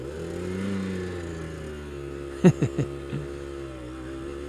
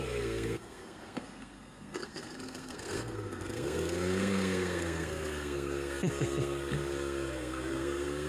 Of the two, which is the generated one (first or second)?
second